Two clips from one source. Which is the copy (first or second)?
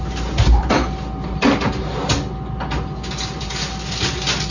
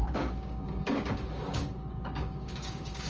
second